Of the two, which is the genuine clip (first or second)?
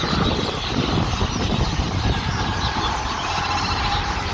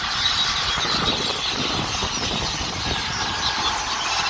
second